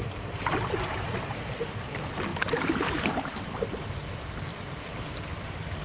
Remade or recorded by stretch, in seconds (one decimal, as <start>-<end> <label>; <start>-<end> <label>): 0.0-5.8 recorded